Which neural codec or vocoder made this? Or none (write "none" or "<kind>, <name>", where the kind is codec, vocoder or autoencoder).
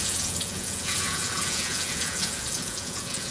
vocoder, Vocos